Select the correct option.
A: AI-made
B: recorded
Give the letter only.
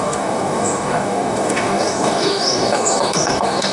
A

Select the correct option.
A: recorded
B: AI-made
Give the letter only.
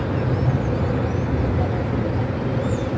A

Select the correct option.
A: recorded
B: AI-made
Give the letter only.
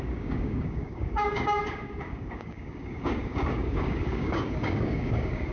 B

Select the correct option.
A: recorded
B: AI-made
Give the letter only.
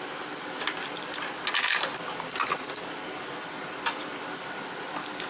A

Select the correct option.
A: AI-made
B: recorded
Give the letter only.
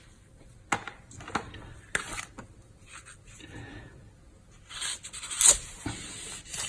B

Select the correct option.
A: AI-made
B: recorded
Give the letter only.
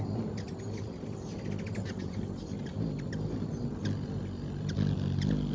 B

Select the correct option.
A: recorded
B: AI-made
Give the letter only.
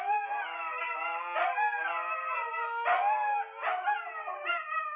A